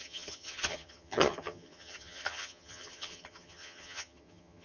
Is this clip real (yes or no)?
no